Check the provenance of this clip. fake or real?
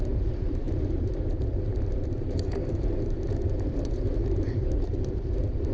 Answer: fake